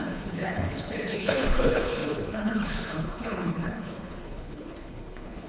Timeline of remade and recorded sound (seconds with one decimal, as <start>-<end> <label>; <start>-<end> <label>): 0.0-5.5 remade